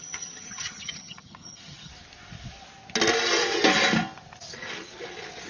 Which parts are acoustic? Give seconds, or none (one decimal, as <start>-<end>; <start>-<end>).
1.9-5.5